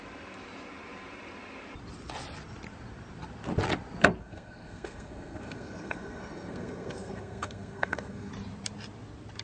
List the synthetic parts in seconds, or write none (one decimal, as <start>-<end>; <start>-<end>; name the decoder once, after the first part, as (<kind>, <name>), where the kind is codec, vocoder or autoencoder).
4.2-8.3 (codec, SNAC)